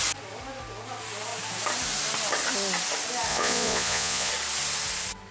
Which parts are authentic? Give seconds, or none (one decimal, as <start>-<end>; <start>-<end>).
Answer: 0.0-3.3; 4.3-5.3